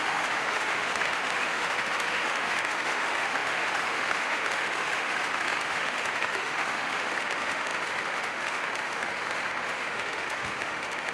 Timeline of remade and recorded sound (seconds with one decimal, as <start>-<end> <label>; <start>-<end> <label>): 0.0-11.1 remade